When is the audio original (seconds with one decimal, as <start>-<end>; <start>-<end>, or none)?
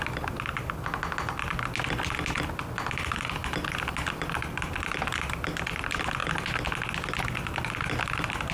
0.0-8.5